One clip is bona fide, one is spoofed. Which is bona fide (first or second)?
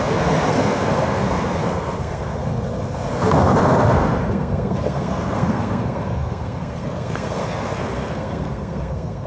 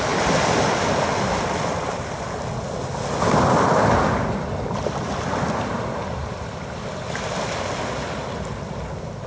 second